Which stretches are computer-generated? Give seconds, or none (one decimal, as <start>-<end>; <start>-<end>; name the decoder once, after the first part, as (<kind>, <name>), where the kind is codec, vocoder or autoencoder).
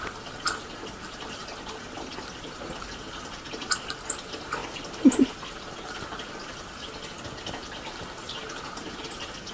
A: none